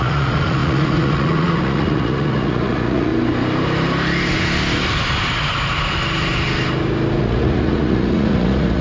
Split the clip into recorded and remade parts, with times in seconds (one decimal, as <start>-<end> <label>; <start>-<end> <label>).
0.0-3.1 remade; 3.1-7.2 recorded; 7.2-8.8 remade